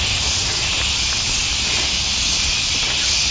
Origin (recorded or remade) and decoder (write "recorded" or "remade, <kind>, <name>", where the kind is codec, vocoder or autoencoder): recorded